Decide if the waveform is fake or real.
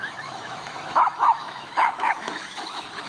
fake